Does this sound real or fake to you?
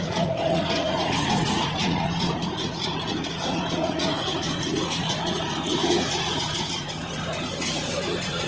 fake